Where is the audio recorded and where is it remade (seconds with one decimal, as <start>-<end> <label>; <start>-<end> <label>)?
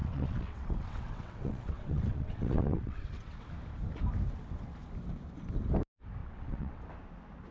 0.0-3.5 remade; 3.5-6.2 recorded; 6.2-6.8 remade; 6.8-7.5 recorded